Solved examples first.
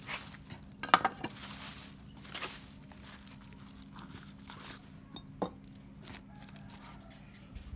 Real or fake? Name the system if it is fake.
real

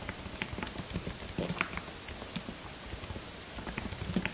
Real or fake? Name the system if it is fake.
real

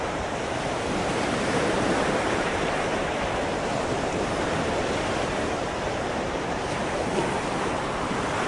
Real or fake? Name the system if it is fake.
fake, vocoder, BigVGAN v2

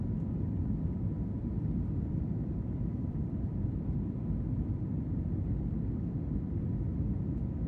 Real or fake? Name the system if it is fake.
fake, vocoder, BigVGAN v2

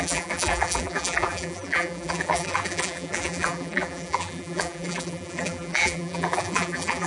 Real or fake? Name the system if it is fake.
fake, vocoder, BigVGAN v2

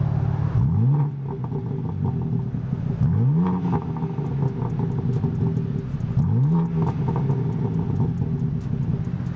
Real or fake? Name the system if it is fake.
real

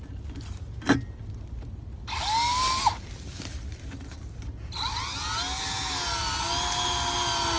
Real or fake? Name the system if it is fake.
real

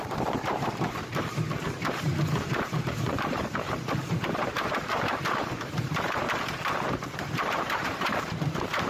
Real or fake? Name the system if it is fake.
fake, vocoder, BigVGAN v2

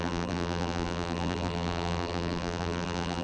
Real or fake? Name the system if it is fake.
fake, vocoder, BigVGAN v2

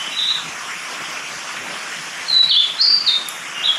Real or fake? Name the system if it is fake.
real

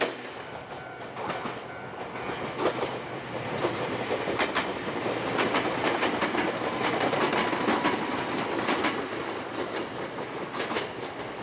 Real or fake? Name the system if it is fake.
real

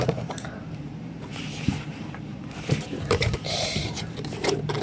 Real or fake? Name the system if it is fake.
fake, vocoder, BigVGAN v2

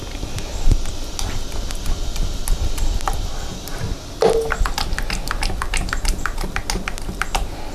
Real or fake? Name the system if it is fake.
real